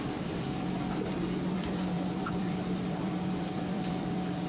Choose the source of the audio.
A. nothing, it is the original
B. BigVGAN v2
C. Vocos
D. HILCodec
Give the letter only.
B